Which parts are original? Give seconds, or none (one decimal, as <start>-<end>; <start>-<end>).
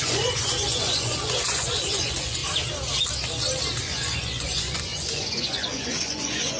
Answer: 2.4-3.8